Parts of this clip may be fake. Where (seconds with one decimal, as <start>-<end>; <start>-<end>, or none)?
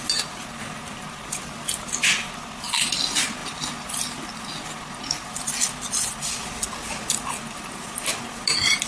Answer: none